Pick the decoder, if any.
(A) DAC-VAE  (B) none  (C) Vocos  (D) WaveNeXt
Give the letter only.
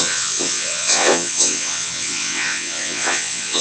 D